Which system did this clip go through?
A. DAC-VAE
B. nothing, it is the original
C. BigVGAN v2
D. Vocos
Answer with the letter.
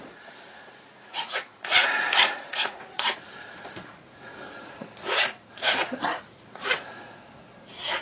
D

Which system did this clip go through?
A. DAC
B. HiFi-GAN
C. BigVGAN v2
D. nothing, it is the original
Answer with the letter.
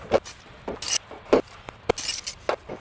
D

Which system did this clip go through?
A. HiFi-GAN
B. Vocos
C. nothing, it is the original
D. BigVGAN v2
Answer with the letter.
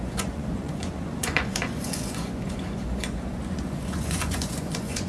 B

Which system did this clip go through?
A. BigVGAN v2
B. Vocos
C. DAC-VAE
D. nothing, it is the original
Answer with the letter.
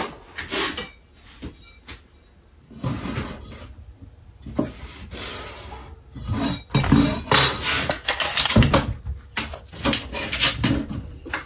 D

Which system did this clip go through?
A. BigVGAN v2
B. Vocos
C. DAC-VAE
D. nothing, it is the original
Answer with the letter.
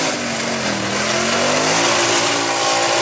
D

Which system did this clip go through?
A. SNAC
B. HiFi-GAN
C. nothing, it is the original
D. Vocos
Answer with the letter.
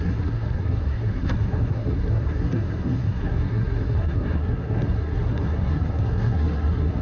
A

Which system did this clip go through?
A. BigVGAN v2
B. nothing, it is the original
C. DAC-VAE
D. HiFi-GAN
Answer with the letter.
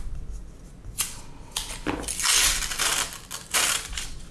B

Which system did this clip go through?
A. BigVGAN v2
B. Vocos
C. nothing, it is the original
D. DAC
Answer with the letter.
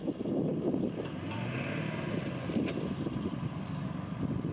C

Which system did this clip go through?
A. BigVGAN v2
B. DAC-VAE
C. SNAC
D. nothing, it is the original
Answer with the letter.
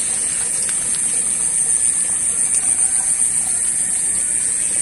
D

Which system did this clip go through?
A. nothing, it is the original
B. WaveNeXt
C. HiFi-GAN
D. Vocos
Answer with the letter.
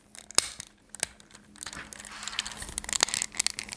A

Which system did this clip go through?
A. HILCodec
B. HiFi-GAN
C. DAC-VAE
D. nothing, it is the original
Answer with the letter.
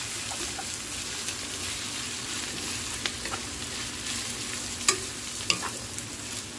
D